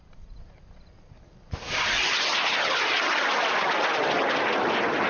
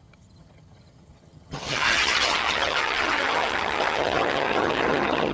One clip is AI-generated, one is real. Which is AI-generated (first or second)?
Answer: second